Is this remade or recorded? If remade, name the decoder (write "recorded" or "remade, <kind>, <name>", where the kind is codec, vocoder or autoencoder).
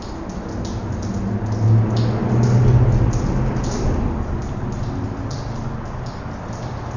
recorded